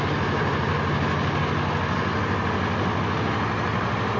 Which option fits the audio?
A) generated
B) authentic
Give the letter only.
B